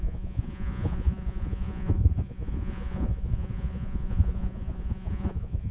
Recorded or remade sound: remade